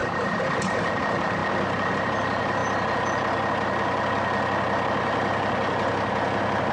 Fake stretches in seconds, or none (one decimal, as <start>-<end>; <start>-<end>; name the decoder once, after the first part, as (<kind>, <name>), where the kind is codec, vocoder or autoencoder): 0.0-1.4 (vocoder, BigVGAN v2); 2.0-2.6